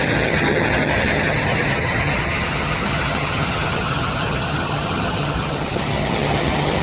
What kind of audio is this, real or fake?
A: fake